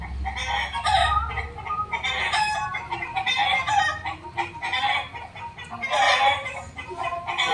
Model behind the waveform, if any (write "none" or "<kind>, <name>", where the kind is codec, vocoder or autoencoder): none